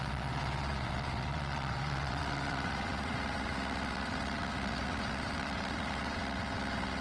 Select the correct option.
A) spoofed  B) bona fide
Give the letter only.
A